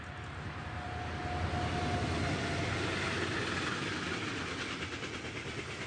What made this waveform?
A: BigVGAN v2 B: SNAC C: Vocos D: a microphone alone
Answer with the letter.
D